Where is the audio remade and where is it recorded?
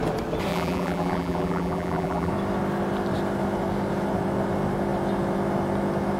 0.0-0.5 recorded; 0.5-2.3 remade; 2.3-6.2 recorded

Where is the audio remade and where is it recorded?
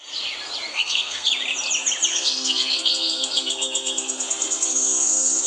0.0-0.7 recorded; 0.7-1.3 remade; 1.3-2.1 recorded; 2.1-5.5 remade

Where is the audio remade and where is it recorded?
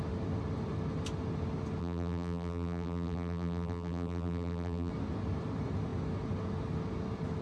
0.0-1.8 recorded; 1.8-4.9 remade; 4.9-7.4 recorded